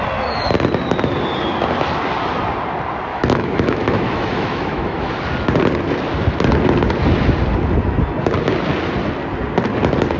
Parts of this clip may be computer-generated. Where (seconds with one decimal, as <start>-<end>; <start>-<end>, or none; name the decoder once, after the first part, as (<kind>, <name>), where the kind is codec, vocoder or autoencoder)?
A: 3.1-5.1 (autoencoder, DAC-VAE)